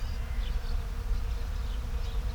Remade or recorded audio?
recorded